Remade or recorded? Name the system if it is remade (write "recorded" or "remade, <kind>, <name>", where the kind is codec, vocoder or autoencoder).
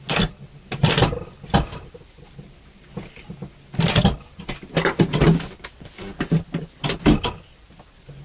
recorded